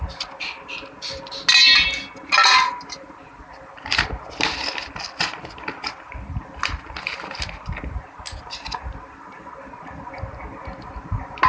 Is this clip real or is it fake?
real